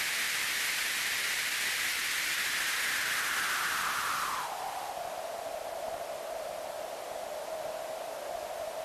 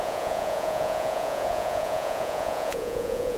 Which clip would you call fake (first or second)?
second